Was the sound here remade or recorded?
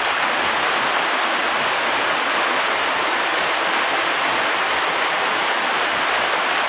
recorded